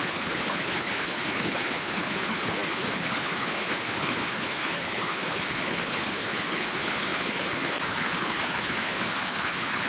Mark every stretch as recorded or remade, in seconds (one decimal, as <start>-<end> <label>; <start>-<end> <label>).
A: 0.0-9.9 remade